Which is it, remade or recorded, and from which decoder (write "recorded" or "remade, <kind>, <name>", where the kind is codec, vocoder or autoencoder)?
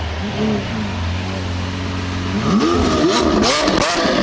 recorded